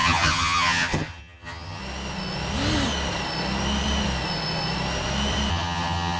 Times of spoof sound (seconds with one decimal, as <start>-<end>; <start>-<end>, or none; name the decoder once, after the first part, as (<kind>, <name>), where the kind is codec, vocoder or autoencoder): 0.0-1.8 (vocoder, HiFi-GAN); 5.5-6.2